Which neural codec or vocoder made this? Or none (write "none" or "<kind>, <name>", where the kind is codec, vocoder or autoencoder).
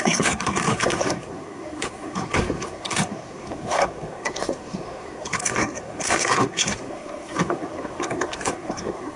codec, SNAC